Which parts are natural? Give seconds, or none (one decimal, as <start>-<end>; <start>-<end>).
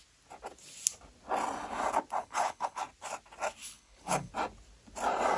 0.0-2.2; 2.8-3.6; 4.3-5.4